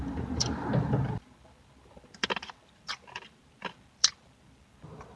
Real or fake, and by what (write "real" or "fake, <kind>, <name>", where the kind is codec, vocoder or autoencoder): fake, vocoder, BigVGAN v2